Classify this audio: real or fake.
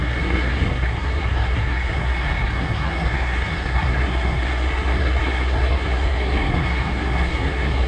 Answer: fake